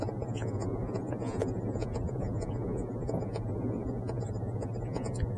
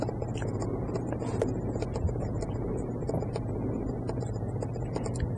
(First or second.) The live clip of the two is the second